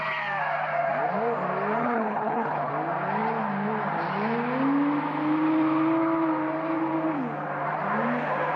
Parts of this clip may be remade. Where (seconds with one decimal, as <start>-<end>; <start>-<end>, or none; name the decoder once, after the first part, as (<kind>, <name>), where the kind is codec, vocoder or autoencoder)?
1.8-2.7 (codec, HILCodec)